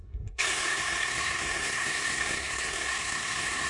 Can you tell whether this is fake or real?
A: fake